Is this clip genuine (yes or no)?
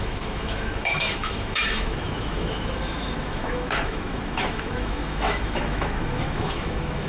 no